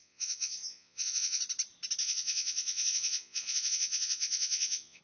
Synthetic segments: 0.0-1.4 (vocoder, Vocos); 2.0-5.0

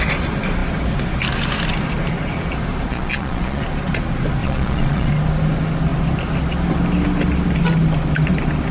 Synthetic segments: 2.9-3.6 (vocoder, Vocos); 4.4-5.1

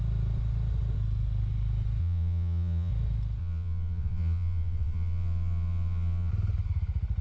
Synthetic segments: 2.0-2.9 (vocoder, Vocos); 3.4-6.3

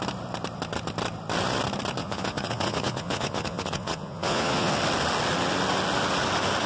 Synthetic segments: 2.0-4.7 (vocoder, Vocos)